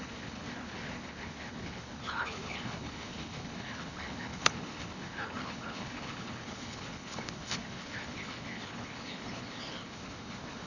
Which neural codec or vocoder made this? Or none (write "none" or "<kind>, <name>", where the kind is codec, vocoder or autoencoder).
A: codec, HILCodec